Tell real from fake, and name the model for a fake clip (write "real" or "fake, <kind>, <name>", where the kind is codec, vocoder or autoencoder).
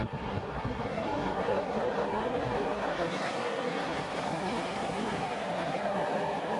fake, codec, SNAC